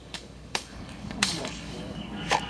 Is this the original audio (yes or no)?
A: no